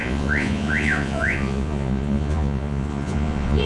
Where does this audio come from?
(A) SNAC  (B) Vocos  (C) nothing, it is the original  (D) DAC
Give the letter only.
B